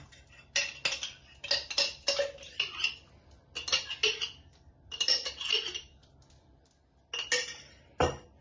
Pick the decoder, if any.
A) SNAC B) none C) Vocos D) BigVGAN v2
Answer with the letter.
B